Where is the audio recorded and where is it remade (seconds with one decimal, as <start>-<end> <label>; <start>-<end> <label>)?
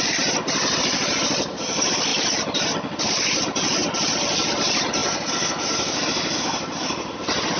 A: 0.0-5.0 recorded; 5.0-7.6 remade